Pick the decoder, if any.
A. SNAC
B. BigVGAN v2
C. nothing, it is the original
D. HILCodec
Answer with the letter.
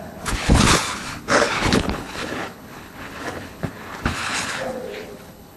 D